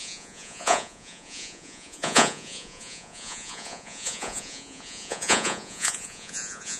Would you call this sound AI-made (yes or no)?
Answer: yes